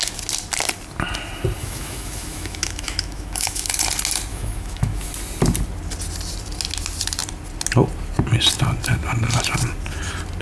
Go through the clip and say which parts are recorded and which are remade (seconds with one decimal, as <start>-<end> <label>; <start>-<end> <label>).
0.0-1.6 recorded; 1.6-3.7 remade; 3.7-4.3 recorded; 4.3-5.1 remade; 5.1-10.4 recorded